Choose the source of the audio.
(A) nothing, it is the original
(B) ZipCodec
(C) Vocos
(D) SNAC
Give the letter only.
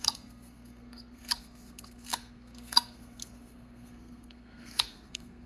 D